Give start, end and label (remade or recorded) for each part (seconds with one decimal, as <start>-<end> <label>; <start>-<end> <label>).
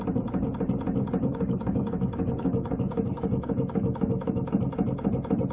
0.0-1.2 recorded; 1.2-4.5 remade; 4.5-5.5 recorded